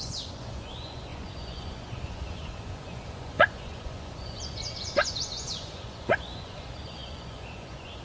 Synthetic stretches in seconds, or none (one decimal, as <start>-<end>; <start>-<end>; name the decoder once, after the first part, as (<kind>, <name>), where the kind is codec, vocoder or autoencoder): 0.0-8.0 (vocoder, Vocos)